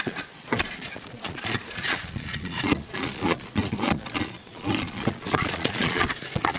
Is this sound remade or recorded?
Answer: remade